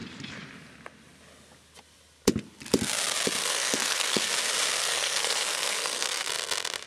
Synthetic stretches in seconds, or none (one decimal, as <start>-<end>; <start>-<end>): 3.4-4.3; 4.8-6.3